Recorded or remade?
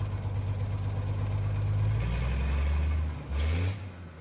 recorded